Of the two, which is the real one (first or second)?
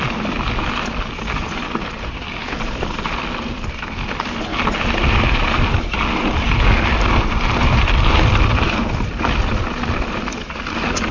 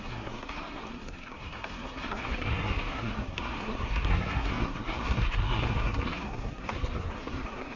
first